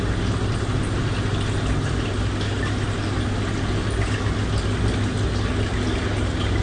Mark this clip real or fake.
real